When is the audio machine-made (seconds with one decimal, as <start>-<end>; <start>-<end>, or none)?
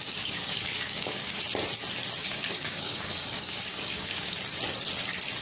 0.0-1.4; 2.2-4.4